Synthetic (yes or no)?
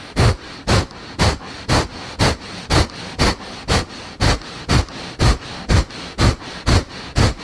no